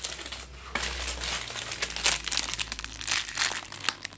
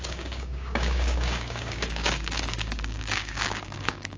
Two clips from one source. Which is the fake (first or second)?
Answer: second